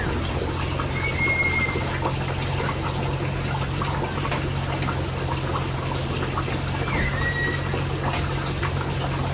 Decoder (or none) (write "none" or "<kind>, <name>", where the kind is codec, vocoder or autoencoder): none